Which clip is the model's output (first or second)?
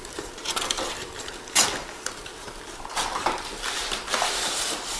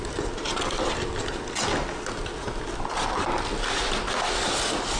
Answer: first